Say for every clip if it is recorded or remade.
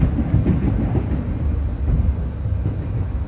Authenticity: recorded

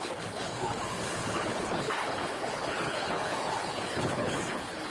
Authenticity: remade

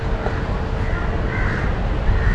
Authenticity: recorded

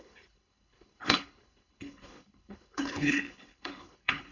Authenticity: remade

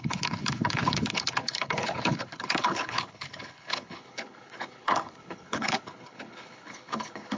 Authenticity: remade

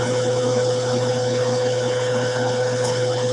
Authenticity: remade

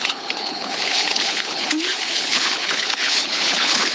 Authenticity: remade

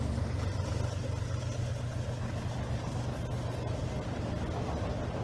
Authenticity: recorded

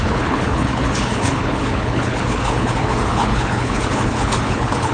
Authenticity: remade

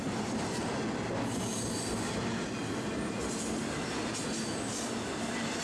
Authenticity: recorded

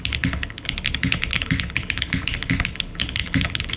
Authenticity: remade